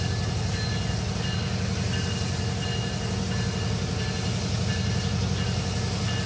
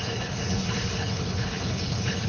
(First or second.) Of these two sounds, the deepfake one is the second